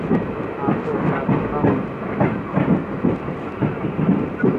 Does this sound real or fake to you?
real